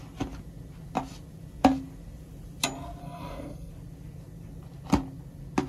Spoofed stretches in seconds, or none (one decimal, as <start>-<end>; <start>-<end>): 3.0-3.7